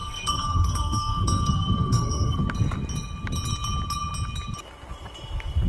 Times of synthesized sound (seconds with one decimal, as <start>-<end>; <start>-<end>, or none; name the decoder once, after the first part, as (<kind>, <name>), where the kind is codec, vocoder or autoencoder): 0.0-2.4 (codec, SNAC)